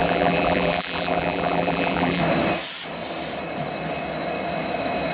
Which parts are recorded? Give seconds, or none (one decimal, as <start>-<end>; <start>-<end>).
2.2-5.1